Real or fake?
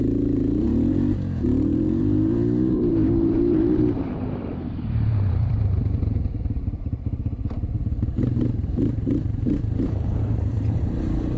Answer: fake